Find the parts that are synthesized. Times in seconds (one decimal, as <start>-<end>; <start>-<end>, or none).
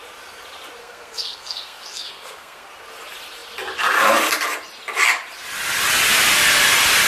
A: 0.8-2.7